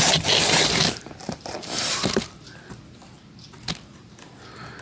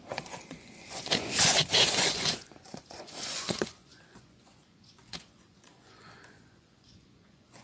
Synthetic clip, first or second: second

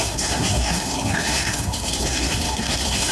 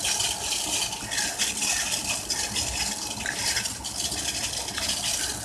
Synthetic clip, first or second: first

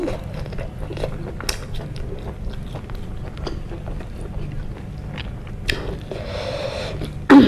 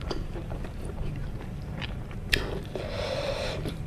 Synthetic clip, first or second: second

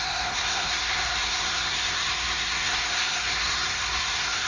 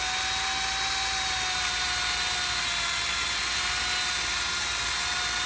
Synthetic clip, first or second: first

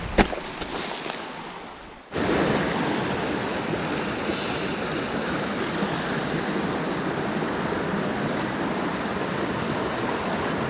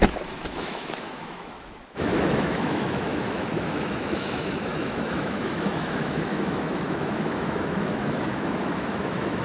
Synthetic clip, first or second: second